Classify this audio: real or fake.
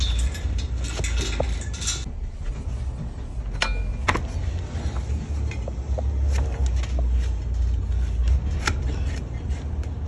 real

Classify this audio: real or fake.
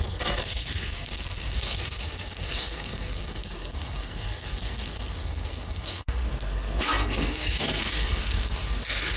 fake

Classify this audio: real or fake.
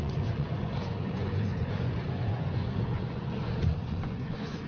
fake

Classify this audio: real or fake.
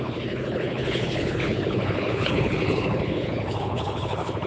fake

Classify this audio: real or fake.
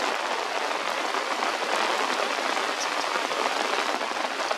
real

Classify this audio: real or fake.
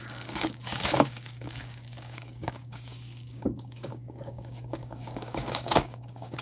fake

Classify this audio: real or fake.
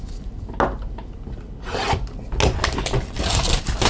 real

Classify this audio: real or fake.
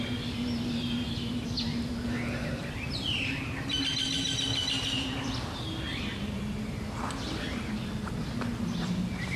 real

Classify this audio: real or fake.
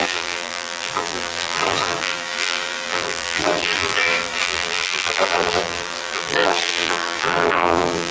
fake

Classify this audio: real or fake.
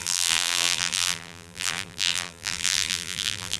fake